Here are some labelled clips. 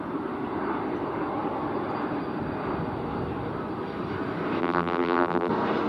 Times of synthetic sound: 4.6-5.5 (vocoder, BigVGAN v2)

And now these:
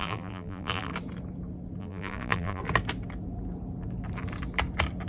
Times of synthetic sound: 0.0-0.9 (vocoder, BigVGAN v2); 1.8-2.6

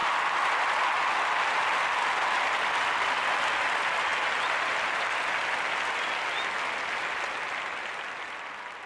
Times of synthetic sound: 0.0-0.6 (vocoder, BigVGAN v2)

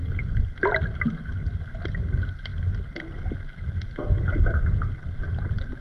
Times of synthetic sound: 0.0-1.1 (vocoder, BigVGAN v2)

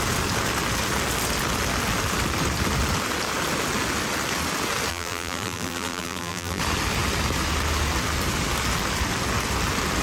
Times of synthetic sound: 4.9-6.6 (vocoder, BigVGAN v2)

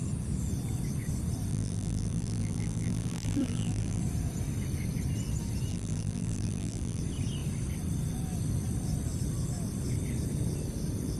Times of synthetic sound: 1.5-4.0 (vocoder, BigVGAN v2); 5.7-7.0

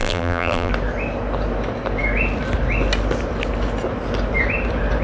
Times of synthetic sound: 0.0-0.7 (vocoder, BigVGAN v2)